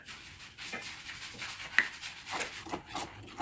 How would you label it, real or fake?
real